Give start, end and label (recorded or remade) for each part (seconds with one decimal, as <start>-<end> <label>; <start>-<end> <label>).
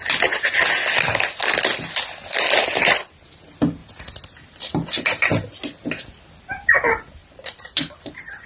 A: 0.0-7.2 recorded; 7.2-8.1 remade; 8.1-8.5 recorded